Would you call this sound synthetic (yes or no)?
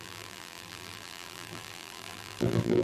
yes